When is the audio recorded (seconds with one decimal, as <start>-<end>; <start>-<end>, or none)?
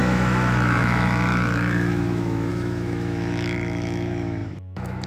none